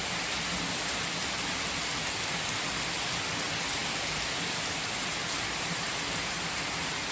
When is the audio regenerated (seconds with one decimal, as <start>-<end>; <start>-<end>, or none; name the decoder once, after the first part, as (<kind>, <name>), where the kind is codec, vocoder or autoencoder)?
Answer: 3.8-5.2 (vocoder, BigVGAN v2)